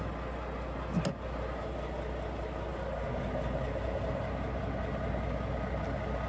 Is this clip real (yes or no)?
yes